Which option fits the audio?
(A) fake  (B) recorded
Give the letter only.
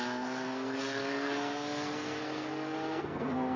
A